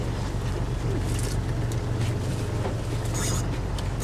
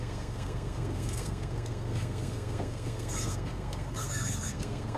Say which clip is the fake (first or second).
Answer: second